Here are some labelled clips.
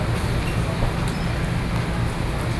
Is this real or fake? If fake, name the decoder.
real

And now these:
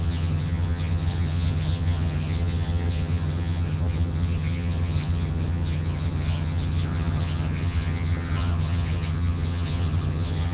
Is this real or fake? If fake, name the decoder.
fake, vocoder, HiFi-GAN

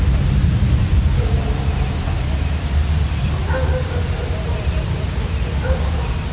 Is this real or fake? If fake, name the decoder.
real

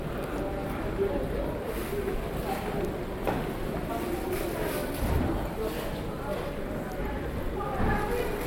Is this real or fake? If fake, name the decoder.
real